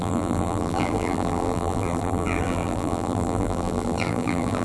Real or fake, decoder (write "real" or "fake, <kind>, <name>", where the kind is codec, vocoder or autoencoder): fake, vocoder, BigVGAN v2